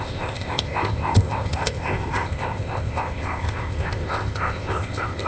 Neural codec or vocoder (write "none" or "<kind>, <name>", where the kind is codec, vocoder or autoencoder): codec, ZipCodec